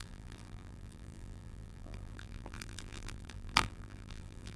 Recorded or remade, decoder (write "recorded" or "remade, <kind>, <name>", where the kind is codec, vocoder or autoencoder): remade, vocoder, BigVGAN v2